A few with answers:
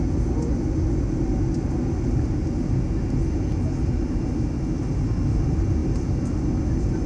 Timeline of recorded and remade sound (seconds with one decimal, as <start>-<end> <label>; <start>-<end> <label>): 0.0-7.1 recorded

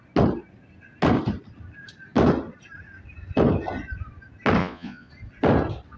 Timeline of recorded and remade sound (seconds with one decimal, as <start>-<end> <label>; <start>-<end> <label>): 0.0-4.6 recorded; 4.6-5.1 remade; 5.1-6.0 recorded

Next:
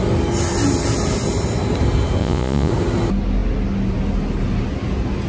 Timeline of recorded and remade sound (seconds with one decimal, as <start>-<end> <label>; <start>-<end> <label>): 0.0-2.2 recorded; 2.2-2.7 remade; 2.7-5.3 recorded

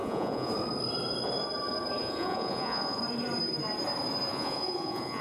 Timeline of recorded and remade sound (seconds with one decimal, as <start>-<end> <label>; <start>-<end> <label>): 0.0-0.5 remade; 0.5-2.0 recorded; 2.0-3.0 remade; 3.0-4.3 recorded; 4.3-5.2 remade

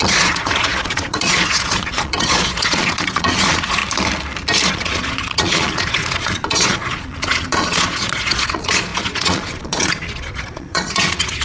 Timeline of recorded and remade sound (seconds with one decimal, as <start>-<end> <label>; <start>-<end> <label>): 0.0-3.8 remade; 3.8-4.7 recorded; 4.7-11.4 remade

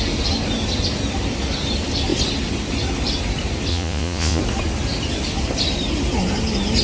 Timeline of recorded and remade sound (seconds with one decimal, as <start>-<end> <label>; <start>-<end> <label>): 0.0-3.7 recorded; 3.7-4.4 remade; 4.4-6.8 recorded

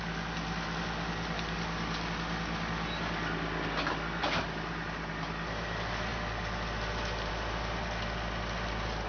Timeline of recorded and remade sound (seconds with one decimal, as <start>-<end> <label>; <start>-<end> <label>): 0.0-9.1 recorded